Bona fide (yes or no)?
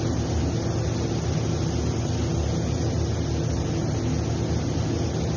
yes